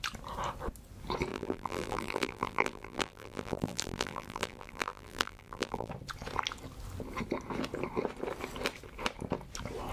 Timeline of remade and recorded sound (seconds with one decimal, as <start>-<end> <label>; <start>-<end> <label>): 0.0-1.3 recorded; 1.3-5.9 remade; 5.9-9.9 recorded

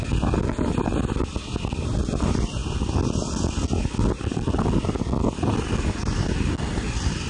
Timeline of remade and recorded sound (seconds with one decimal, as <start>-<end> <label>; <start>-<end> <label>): 0.0-7.3 recorded

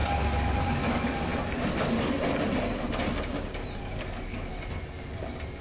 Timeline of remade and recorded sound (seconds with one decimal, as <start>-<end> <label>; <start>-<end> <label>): 0.0-1.3 remade; 1.3-3.8 recorded; 3.8-4.5 remade; 4.5-5.6 recorded

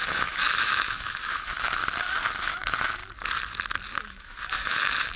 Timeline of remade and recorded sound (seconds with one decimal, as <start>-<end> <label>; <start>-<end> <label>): 0.0-1.8 remade; 1.8-2.4 recorded; 2.4-3.0 remade; 3.0-4.0 recorded; 4.0-5.2 remade

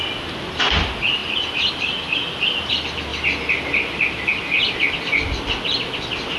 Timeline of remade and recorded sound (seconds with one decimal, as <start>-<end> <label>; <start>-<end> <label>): 0.0-3.1 recorded; 3.1-4.3 remade; 4.3-6.4 recorded